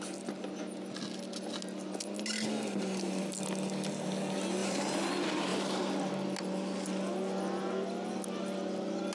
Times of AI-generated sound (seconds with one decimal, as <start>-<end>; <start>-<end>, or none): 4.6-5.1; 5.5-6.1